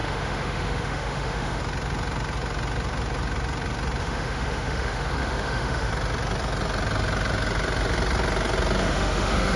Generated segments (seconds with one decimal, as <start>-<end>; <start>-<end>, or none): 0.0-1.6; 4.0-5.9; 8.8-9.6